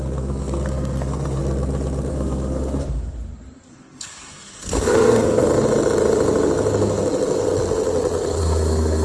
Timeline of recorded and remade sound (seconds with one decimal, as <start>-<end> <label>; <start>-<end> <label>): 0.0-1.4 remade; 1.4-2.1 recorded; 2.1-3.0 remade; 3.0-3.7 recorded; 3.7-5.4 remade; 5.4-8.4 recorded; 8.4-9.0 remade